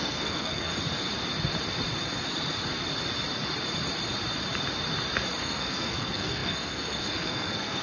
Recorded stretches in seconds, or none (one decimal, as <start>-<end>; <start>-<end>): 0.7-5.4